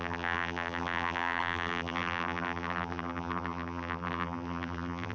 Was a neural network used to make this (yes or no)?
yes